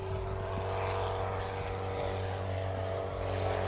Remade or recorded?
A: recorded